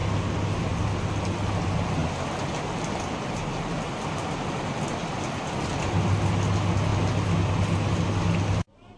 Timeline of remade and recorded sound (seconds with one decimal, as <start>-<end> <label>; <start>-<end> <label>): 0.0-9.0 recorded